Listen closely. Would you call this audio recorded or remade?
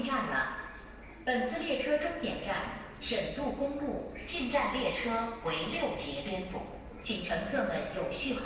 recorded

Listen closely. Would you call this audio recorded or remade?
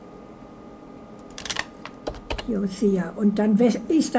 remade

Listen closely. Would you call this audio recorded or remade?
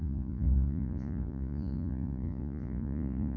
remade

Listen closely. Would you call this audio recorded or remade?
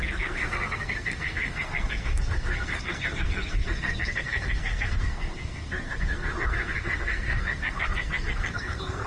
remade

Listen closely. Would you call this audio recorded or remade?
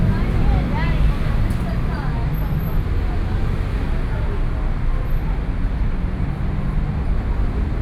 recorded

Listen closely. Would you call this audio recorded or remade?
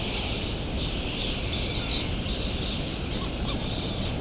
recorded